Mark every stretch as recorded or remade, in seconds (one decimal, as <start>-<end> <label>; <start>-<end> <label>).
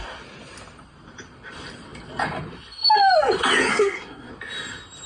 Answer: 0.0-3.7 recorded; 3.7-4.3 remade; 4.3-5.1 recorded